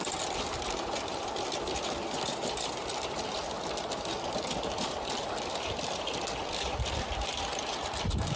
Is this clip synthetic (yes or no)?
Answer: yes